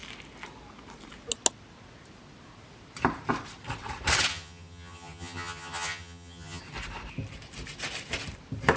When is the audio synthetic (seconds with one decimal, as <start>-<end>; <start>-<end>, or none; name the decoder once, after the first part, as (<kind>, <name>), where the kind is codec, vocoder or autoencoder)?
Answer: 4.3-6.6 (vocoder, HiFi-GAN)